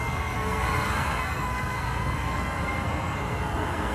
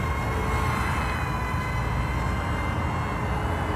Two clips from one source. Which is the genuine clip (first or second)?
second